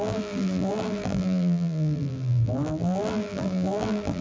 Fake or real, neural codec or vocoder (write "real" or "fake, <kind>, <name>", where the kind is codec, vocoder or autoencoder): fake, vocoder, BigVGAN v2